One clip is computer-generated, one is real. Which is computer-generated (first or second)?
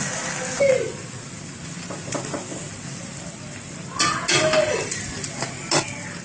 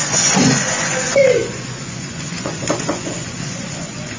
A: second